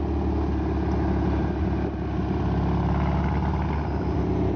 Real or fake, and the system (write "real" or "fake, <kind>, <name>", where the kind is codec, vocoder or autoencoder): real